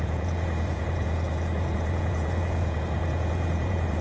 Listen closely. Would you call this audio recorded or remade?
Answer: remade